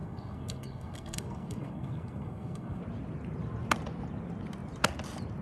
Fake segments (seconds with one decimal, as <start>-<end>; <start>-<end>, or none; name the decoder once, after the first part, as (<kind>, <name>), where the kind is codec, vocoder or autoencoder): 0.0-2.8 (codec, SNAC)